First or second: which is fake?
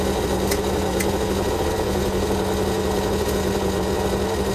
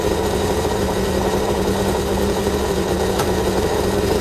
second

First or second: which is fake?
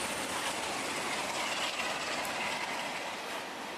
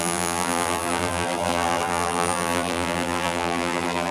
second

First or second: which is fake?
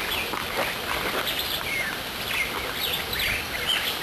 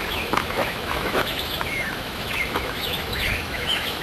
second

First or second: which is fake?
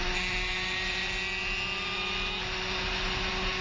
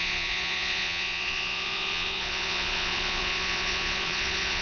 second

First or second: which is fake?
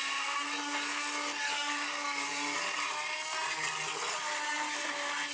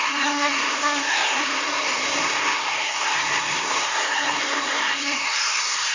second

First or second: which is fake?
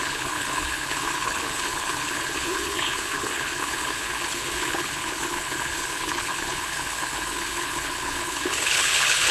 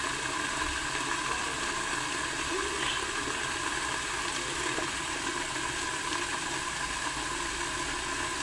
first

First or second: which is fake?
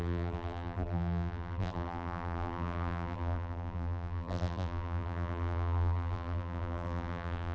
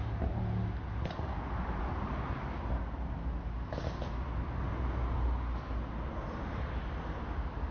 first